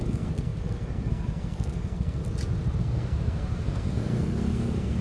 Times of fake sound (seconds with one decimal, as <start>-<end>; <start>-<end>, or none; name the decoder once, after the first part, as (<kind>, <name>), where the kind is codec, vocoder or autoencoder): 0.0-2.2 (codec, SNAC); 2.8-5.0